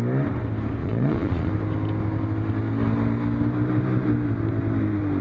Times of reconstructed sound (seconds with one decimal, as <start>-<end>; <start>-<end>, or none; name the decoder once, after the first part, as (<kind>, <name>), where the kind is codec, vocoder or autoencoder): 0.8-1.5 (vocoder, Vocos)